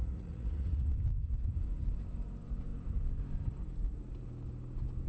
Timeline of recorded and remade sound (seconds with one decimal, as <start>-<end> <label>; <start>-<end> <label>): 0.0-0.9 remade; 0.9-5.1 recorded